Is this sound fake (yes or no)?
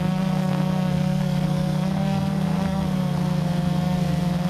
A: yes